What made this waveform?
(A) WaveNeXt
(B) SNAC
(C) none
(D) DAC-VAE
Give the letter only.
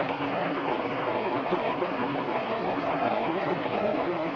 B